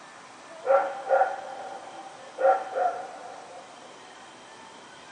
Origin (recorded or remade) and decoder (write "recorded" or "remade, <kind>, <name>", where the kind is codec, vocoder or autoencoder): recorded